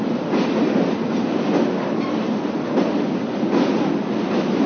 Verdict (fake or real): real